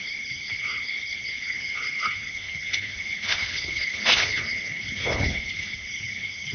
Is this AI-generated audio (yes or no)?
yes